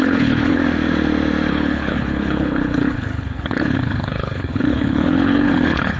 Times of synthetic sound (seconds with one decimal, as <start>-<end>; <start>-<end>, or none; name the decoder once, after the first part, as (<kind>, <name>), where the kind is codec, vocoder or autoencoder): 0.0-0.6 (codec, HILCodec); 1.5-6.0